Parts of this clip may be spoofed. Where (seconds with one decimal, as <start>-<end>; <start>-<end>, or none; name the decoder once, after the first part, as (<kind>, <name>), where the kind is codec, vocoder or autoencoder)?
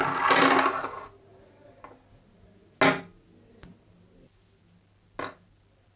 none